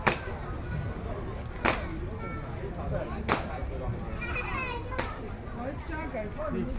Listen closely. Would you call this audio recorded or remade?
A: recorded